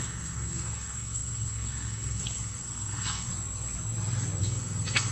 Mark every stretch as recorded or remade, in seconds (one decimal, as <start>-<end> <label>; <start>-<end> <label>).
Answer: 0.0-3.3 remade; 3.3-4.4 recorded; 4.4-5.1 remade